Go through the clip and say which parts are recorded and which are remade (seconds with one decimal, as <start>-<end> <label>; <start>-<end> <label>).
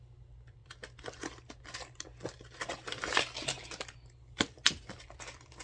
0.0-5.6 recorded